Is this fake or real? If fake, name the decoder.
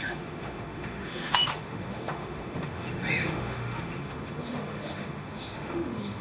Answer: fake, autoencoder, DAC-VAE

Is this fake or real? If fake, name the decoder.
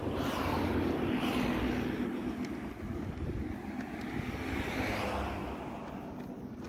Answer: real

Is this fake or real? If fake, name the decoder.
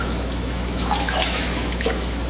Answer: fake, autoencoder, DAC-VAE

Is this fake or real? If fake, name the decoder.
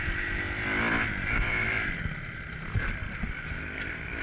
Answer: real